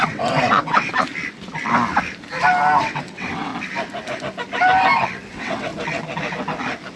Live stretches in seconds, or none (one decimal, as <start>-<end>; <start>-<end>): 0.9-2.8; 3.5-5.3; 5.7-7.0